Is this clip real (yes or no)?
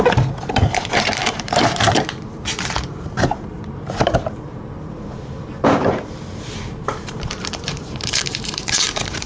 no